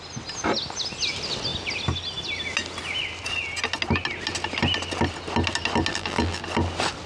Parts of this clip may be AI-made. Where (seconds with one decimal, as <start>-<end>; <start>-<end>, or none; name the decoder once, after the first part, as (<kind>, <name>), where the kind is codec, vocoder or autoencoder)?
5.9-6.4 (vocoder, BigVGAN v2)